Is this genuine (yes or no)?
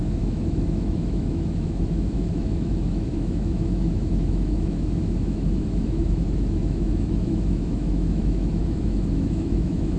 no